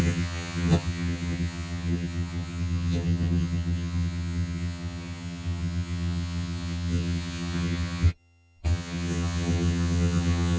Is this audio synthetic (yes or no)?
yes